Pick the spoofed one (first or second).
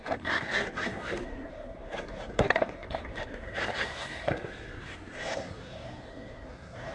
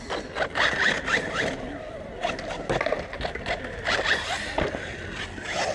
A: first